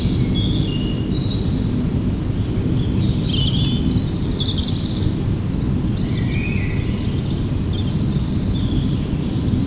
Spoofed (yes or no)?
no